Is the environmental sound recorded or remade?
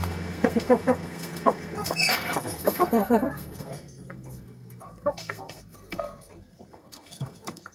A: remade